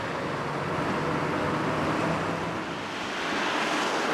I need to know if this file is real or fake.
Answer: real